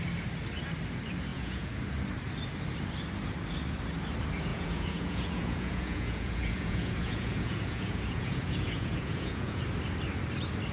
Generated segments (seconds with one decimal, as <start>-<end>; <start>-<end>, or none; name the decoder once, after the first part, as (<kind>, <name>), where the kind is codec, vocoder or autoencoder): 1.3-1.8 (vocoder, Vocos); 4.5-9.6